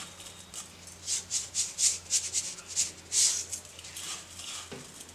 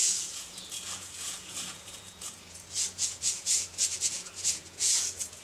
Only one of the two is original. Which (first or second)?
first